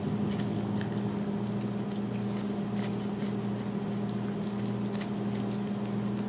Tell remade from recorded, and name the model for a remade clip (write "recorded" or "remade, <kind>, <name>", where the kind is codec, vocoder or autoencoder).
recorded